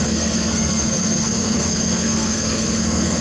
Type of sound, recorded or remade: remade